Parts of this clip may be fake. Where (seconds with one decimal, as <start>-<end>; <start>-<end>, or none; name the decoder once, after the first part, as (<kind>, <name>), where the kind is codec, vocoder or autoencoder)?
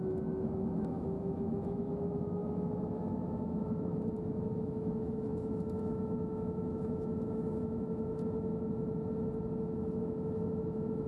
0.0-8.9 (autoencoder, DAC-VAE); 9.6-11.1